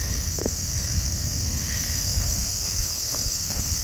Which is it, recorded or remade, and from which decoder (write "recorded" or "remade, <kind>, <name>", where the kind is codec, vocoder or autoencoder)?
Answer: remade, codec, SNAC